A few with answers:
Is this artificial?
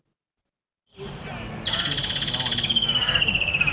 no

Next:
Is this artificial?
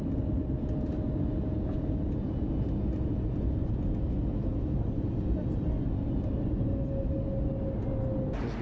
no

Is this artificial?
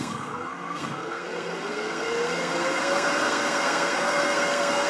yes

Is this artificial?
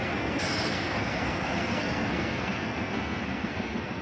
yes